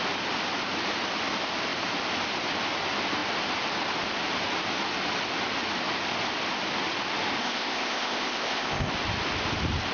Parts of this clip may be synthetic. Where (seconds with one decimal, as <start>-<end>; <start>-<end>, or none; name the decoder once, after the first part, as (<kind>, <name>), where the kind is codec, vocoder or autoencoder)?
7.4-8.9 (codec, ZipCodec)